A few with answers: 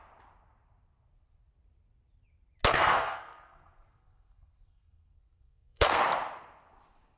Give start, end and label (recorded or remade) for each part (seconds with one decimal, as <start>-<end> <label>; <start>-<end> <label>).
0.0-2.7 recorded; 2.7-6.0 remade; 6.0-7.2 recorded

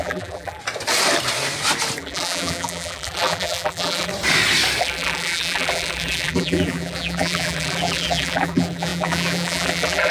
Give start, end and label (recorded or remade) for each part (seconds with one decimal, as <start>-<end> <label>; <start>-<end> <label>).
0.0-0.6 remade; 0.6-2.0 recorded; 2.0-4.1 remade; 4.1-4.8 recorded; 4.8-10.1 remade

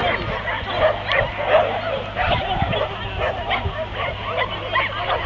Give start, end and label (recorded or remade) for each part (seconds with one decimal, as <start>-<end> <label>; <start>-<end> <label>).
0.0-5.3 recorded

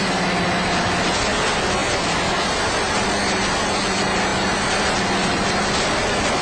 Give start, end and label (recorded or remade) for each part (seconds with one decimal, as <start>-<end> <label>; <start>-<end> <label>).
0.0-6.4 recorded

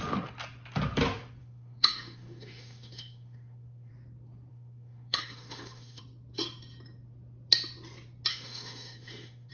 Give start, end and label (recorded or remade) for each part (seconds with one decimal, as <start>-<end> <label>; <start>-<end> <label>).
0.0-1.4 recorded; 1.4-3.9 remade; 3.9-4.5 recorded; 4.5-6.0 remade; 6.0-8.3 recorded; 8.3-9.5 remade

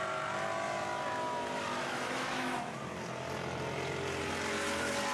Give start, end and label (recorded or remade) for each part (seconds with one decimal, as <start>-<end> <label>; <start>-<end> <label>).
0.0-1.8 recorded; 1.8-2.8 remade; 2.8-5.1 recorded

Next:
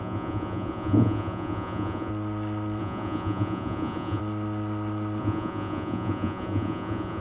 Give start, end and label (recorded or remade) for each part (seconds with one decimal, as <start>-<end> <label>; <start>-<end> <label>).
0.0-2.1 remade; 2.1-2.8 recorded; 2.8-4.2 remade; 4.2-5.2 recorded; 5.2-7.2 remade

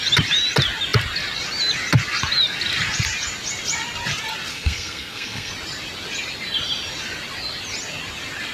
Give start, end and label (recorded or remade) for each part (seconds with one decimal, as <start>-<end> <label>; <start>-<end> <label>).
0.0-4.5 recorded; 4.5-5.5 remade; 5.5-8.5 recorded